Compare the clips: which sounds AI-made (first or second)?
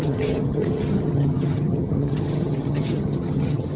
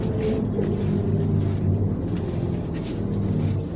first